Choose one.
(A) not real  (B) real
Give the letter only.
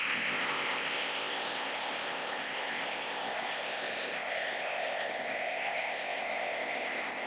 A